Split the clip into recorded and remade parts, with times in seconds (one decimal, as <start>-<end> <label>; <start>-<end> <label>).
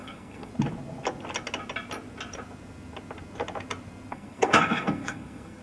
0.0-0.5 remade; 0.5-4.1 recorded; 4.1-5.6 remade